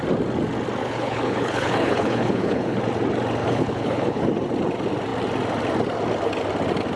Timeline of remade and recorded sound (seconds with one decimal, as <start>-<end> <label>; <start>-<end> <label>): 0.0-0.8 recorded; 0.8-2.8 remade; 2.8-3.4 recorded; 3.4-4.2 remade; 4.2-7.0 recorded